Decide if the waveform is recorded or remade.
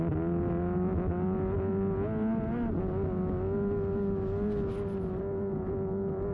recorded